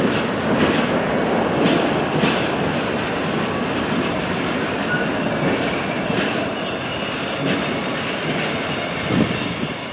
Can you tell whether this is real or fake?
fake